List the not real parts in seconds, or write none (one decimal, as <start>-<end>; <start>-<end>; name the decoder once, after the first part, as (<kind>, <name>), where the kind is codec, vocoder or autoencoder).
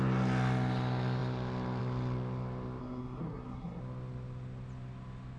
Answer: 2.8-3.8 (codec, SNAC)